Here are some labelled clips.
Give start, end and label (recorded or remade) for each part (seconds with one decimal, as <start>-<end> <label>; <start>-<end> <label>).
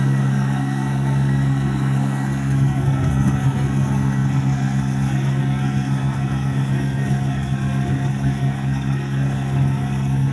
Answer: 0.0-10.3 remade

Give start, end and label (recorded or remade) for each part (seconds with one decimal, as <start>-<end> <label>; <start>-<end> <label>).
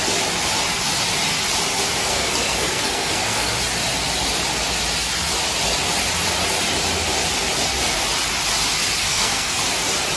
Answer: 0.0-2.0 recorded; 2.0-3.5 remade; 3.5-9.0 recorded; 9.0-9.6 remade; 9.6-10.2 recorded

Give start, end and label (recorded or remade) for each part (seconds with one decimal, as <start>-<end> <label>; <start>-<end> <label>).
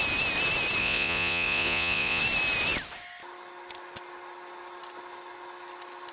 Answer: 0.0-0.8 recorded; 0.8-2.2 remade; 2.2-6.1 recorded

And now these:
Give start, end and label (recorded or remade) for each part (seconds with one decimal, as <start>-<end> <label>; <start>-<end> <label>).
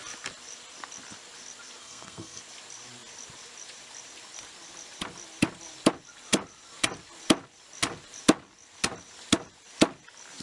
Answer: 0.0-1.8 recorded; 1.8-2.4 remade; 2.4-10.4 recorded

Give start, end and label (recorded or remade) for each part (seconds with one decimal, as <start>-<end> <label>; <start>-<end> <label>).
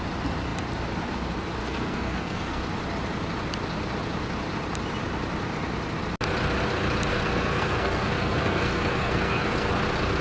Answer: 0.0-1.6 recorded; 1.6-2.6 remade; 2.6-7.1 recorded; 7.1-9.7 remade; 9.7-10.2 recorded